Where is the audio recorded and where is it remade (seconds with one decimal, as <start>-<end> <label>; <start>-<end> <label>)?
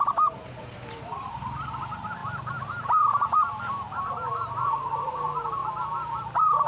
0.0-5.6 remade; 5.6-6.2 recorded; 6.2-6.7 remade